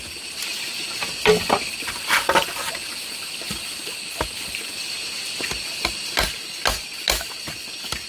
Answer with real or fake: real